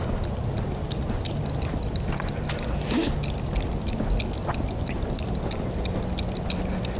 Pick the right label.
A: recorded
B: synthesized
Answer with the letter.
A